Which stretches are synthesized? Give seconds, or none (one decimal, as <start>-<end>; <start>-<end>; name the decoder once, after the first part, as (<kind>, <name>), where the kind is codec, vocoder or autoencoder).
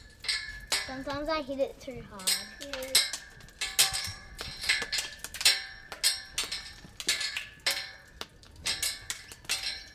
3.8-4.3 (codec, SNAC)